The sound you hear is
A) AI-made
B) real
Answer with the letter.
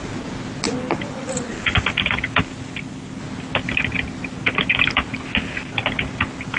B